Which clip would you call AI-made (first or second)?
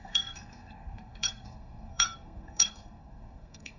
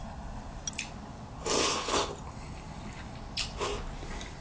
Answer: first